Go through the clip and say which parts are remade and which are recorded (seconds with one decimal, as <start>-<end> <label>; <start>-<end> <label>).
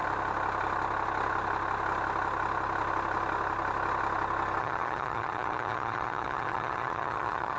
0.0-4.6 recorded; 4.6-7.6 remade